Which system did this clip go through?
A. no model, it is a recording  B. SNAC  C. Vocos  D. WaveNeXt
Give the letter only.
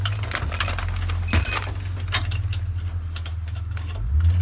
A